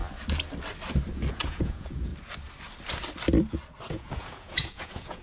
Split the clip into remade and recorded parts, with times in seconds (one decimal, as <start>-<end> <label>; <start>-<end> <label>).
0.0-1.3 recorded; 1.3-2.1 remade; 2.1-3.9 recorded; 3.9-5.2 remade